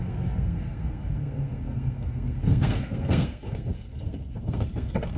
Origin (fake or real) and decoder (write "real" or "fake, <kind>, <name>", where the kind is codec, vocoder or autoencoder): fake, codec, SNAC